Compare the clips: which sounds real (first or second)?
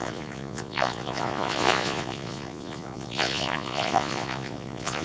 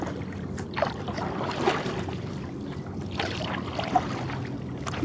second